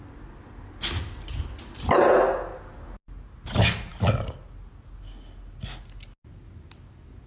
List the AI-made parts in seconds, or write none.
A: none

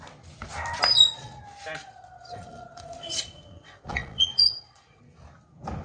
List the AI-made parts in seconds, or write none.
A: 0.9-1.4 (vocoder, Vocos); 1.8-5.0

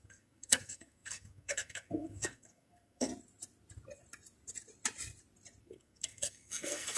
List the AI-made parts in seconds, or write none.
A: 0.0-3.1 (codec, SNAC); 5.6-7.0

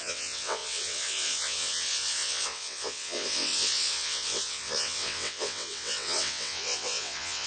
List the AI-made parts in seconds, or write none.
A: 0.0-7.5 (vocoder, WaveNeXt)

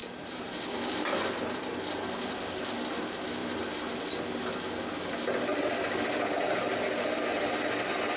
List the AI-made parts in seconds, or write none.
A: 0.0-1.2 (vocoder, BigVGAN v2); 3.4-4.0

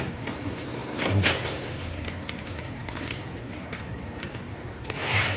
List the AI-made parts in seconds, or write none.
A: 0.0-5.4 (codec, SNAC)

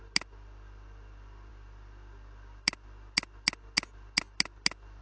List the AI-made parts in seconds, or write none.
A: none